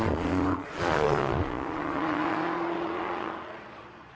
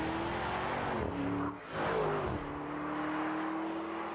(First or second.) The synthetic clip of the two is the first